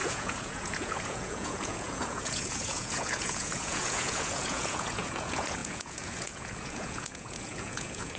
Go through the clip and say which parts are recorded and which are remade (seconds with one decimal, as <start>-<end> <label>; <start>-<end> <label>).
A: 0.0-8.2 remade